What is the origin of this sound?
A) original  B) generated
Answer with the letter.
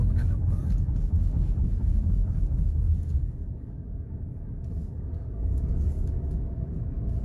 B